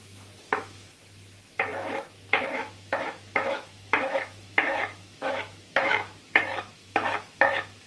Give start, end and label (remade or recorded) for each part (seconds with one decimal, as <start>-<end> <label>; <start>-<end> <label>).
0.0-7.9 remade